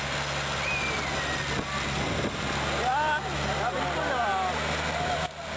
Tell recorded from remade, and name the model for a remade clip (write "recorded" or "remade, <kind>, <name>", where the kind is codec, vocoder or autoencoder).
recorded